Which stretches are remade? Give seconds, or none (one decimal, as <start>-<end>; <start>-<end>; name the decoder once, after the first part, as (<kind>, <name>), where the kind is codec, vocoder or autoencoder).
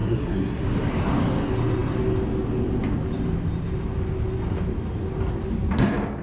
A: 0.0-0.6 (codec, SNAC)